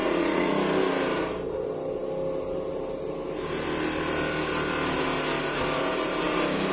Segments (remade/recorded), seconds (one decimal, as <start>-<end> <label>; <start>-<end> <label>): 0.0-0.5 remade; 0.5-6.7 recorded